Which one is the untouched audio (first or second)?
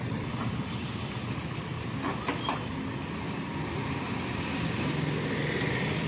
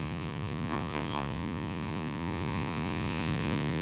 first